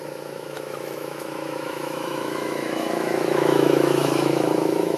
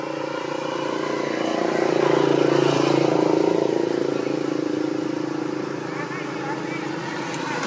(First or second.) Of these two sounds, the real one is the second